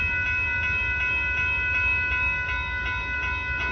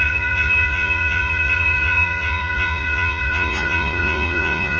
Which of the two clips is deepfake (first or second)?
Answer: second